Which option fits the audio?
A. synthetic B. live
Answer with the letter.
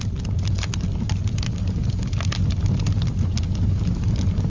B